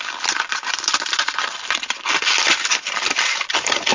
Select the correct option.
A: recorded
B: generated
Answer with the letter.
B